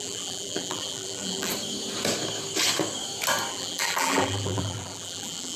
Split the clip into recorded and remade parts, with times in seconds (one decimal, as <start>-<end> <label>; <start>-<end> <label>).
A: 0.0-1.5 remade; 1.5-3.5 recorded; 3.5-5.6 remade